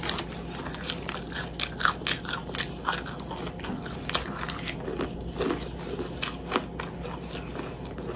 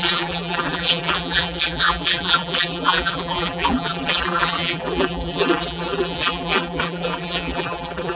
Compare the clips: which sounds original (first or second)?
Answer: first